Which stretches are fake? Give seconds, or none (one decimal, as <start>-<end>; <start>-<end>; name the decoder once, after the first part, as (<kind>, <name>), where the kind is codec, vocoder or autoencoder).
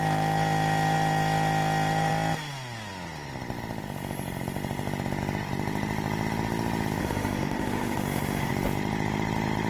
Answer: 7.0-8.5 (autoencoder, DAC-VAE)